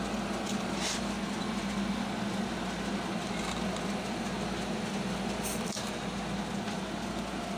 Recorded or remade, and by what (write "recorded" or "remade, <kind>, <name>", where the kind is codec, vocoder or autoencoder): recorded